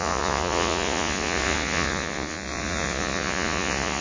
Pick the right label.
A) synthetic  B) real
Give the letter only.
A